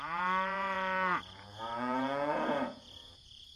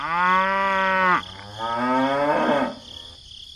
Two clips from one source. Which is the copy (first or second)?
first